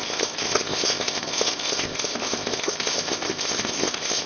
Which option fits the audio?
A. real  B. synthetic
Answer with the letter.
B